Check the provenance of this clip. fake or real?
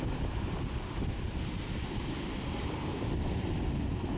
real